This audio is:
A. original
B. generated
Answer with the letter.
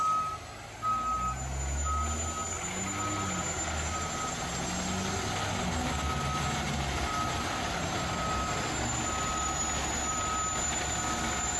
A